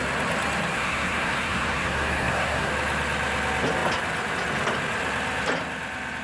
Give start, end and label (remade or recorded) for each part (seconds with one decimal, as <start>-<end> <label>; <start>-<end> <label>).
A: 0.0-0.7 recorded; 0.7-2.7 remade; 2.7-6.2 recorded